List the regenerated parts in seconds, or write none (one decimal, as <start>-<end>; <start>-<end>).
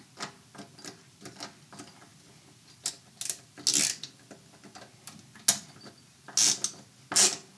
none